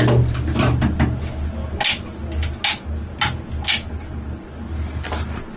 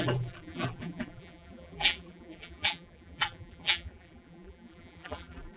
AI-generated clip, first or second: second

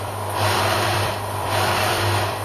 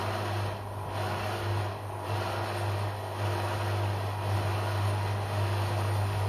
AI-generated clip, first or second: first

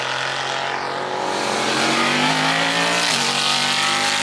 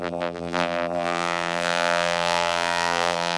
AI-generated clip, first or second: second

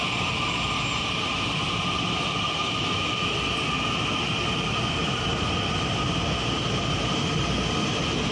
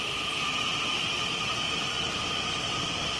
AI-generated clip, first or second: second